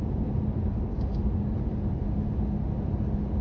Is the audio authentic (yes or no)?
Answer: yes